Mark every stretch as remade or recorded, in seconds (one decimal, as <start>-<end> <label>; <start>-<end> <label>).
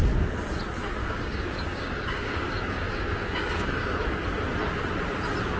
0.0-1.0 recorded; 1.0-4.2 remade; 4.2-5.6 recorded